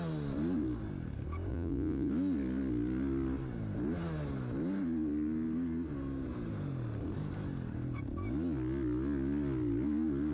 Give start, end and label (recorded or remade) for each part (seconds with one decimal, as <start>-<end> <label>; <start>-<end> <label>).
0.0-1.5 recorded; 1.5-2.1 remade; 2.1-10.3 recorded